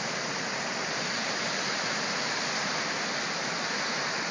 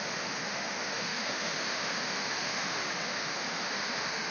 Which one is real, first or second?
first